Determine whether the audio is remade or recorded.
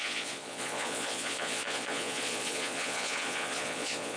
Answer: remade